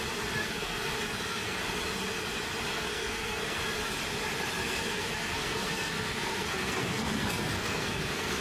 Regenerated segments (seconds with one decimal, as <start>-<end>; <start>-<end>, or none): 0.4-1.6; 2.7-3.6; 4.6-8.4